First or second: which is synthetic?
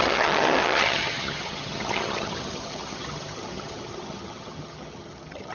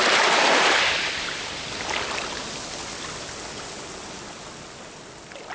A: first